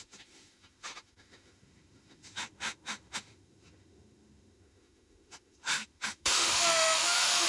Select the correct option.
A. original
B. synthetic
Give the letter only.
B